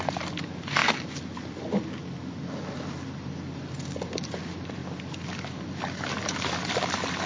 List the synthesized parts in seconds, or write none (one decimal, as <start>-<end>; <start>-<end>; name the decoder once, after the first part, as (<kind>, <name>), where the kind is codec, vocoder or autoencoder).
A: 0.0-0.8 (vocoder, BigVGAN v2); 2.7-7.3